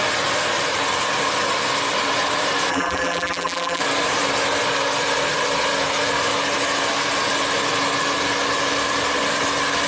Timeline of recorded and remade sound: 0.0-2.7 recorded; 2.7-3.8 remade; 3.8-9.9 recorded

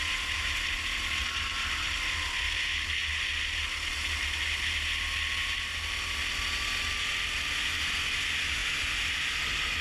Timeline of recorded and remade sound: 0.0-9.8 recorded